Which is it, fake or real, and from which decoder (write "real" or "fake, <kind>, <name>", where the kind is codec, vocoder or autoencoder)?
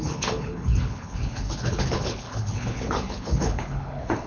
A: fake, codec, HILCodec